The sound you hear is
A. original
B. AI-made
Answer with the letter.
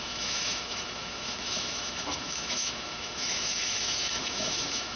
B